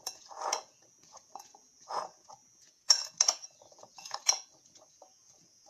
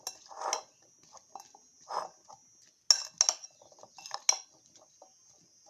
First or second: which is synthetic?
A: first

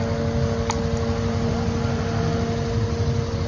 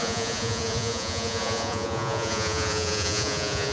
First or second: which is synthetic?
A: second